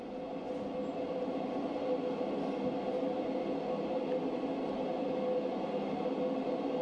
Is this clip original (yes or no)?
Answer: yes